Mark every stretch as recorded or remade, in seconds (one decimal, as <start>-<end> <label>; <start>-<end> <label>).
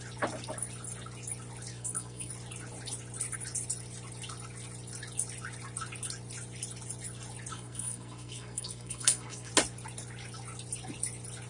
0.0-1.7 recorded; 1.7-2.3 remade; 2.3-7.5 recorded; 7.5-9.5 remade; 9.5-11.5 recorded